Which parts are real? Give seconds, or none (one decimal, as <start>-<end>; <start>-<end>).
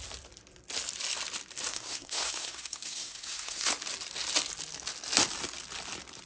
0.0-1.7; 3.7-6.3